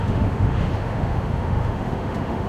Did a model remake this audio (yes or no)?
yes